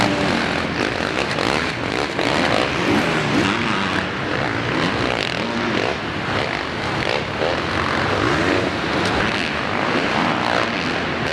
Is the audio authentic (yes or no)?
yes